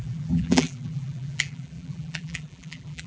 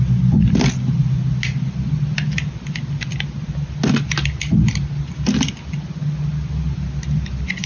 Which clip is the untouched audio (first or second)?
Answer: second